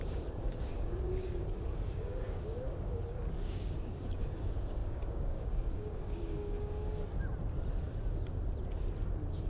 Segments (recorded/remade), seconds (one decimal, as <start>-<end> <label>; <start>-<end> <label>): 0.0-7.1 remade; 7.1-9.5 recorded